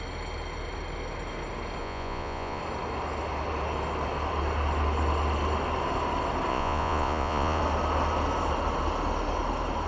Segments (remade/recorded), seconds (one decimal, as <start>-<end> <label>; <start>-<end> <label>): 0.0-1.8 recorded; 1.8-2.6 remade; 2.6-6.5 recorded; 6.5-7.6 remade; 7.6-9.9 recorded